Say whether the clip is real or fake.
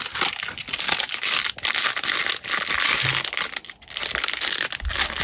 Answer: real